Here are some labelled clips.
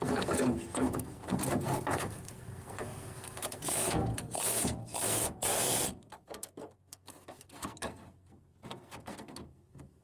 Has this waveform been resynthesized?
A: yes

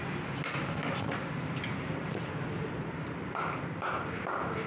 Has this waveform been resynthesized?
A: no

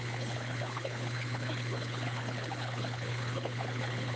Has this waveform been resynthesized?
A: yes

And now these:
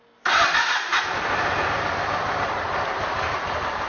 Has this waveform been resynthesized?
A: no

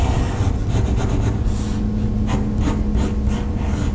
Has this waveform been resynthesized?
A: no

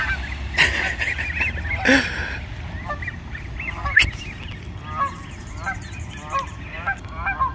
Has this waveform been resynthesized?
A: no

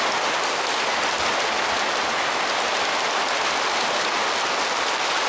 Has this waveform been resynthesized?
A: no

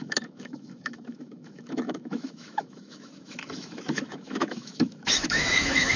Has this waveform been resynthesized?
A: yes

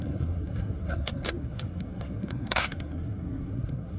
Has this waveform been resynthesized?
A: yes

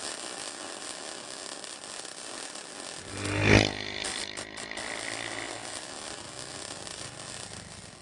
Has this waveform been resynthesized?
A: no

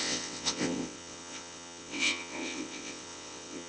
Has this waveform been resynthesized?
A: yes